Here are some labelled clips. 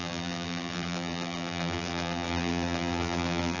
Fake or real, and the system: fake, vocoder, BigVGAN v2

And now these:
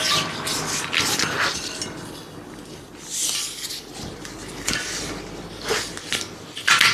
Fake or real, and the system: real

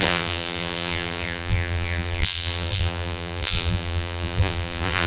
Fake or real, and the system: fake, vocoder, BigVGAN v2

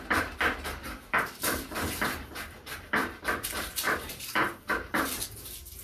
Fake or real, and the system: fake, vocoder, BigVGAN v2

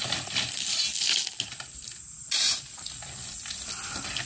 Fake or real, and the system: real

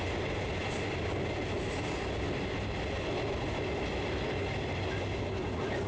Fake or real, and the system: real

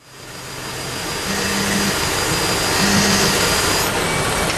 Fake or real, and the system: real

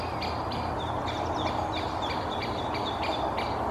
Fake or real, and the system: real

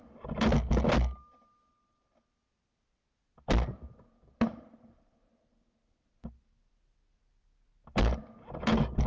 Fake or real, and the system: real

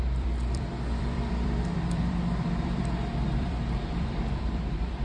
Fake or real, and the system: fake, vocoder, BigVGAN v2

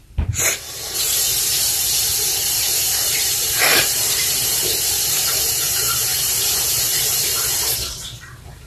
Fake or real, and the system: fake, vocoder, BigVGAN v2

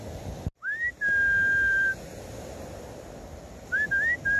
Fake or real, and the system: real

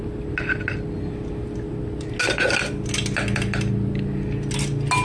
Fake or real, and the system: real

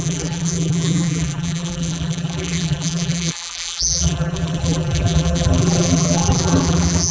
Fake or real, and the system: fake, vocoder, BigVGAN v2